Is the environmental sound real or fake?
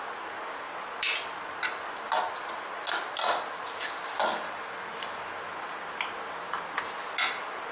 real